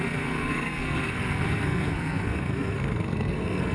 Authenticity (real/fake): fake